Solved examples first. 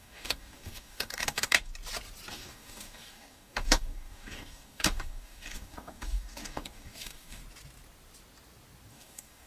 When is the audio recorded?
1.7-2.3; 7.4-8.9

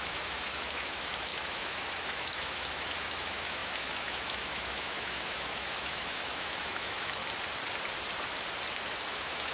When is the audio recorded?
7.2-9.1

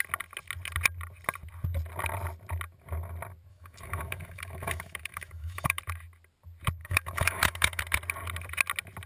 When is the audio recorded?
0.0-3.5; 5.8-6.8; 7.8-9.1